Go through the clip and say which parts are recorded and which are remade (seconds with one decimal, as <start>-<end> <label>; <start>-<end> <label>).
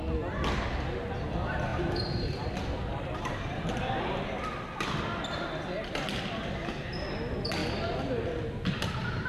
0.0-1.7 recorded; 1.7-4.4 remade; 4.4-9.3 recorded